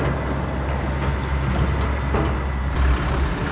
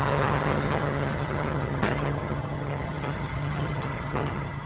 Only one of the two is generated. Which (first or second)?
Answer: second